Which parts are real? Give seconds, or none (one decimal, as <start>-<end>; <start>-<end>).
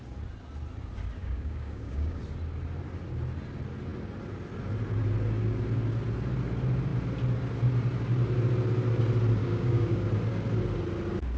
0.0-1.2; 2.2-9.4; 10.1-11.4